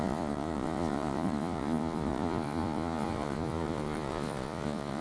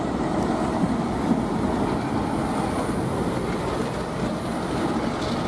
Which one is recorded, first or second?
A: second